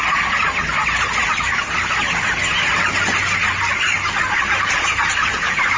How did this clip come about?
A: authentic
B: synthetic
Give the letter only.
A